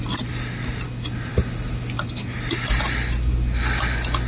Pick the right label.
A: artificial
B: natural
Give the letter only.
B